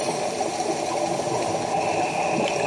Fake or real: real